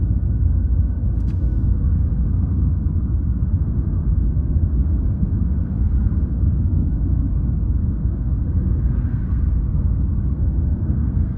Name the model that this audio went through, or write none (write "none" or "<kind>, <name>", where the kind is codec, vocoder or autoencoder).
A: codec, SNAC